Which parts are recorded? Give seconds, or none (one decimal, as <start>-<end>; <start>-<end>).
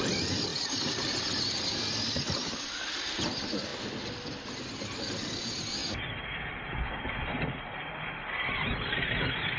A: 0.0-9.6